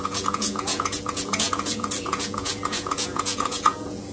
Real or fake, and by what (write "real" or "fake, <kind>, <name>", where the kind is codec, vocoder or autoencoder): fake, vocoder, Vocos